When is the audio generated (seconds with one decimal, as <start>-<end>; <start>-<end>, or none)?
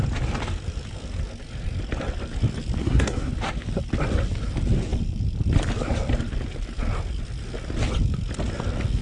2.8-3.3